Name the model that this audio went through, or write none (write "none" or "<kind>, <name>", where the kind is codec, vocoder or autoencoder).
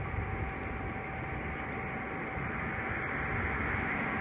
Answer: none